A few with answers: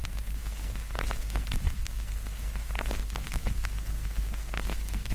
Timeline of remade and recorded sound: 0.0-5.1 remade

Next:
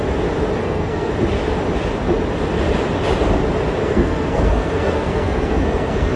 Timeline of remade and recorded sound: 0.0-0.6 recorded; 0.6-1.1 remade; 1.1-3.8 recorded; 3.8-6.2 remade

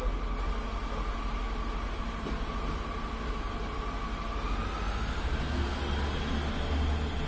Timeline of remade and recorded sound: 0.0-5.2 recorded; 5.2-5.8 remade; 5.8-7.3 recorded

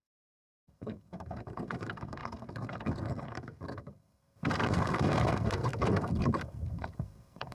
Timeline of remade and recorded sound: 0.0-7.5 remade

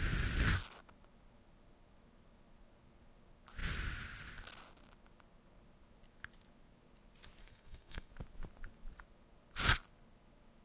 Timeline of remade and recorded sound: 0.0-7.4 recorded; 7.4-8.1 remade; 8.1-10.6 recorded

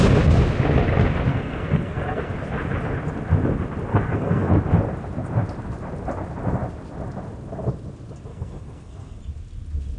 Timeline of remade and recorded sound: 0.0-1.3 recorded; 1.3-2.3 remade; 2.3-3.9 recorded; 3.9-4.5 remade; 4.5-8.3 recorded; 8.3-9.2 remade; 9.2-10.0 recorded

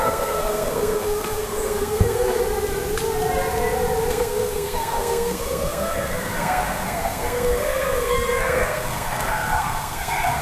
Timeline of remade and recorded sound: 0.0-2.4 remade; 2.4-4.1 recorded; 4.1-10.4 remade

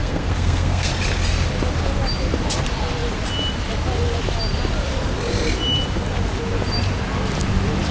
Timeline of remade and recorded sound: 0.0-0.9 remade; 0.9-7.9 recorded